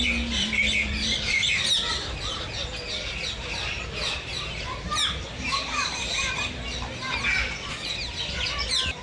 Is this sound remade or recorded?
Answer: recorded